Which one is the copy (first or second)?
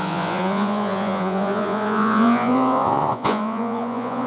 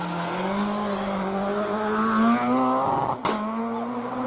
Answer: first